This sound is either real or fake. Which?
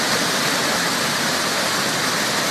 real